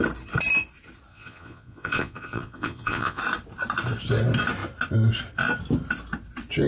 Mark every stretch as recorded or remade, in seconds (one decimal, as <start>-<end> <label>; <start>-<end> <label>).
0.0-1.1 recorded; 1.1-3.2 remade; 3.2-6.7 recorded